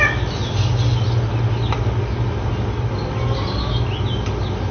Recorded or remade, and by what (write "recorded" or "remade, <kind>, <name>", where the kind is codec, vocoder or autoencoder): recorded